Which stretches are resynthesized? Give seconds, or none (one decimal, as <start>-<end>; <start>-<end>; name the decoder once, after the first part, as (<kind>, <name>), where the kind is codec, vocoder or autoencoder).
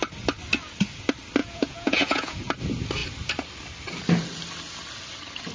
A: 1.4-2.5 (vocoder, Vocos)